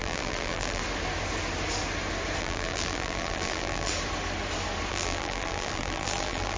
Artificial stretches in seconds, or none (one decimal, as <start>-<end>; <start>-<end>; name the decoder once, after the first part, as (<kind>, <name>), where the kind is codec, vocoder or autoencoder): 0.0-0.8 (vocoder, BigVGAN v2); 2.4-3.9; 4.9-6.6